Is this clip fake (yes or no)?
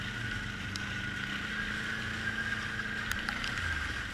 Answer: no